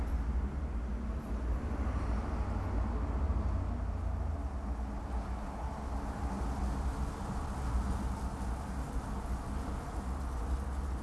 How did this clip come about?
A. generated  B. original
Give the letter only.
B